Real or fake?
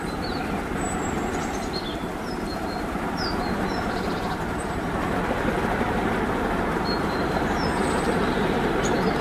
fake